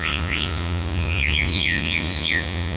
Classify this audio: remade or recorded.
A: remade